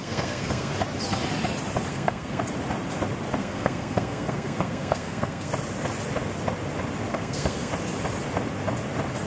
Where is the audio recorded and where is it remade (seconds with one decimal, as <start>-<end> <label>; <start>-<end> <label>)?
0.0-0.7 remade; 0.7-1.9 recorded; 1.9-2.4 remade; 2.4-3.4 recorded; 3.4-5.5 remade; 5.5-7.1 recorded; 7.1-7.7 remade; 7.7-9.3 recorded